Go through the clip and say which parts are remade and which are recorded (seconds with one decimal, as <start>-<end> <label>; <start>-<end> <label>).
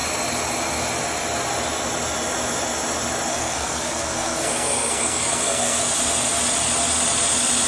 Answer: 0.0-3.3 recorded; 3.3-5.8 remade; 5.8-7.7 recorded